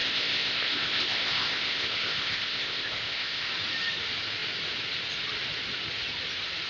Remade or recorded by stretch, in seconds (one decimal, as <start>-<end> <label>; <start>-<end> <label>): 0.0-3.5 remade; 3.5-6.7 recorded